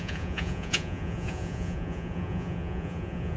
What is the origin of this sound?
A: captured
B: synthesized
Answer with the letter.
B